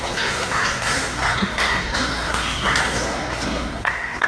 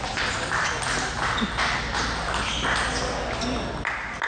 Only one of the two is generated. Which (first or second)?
first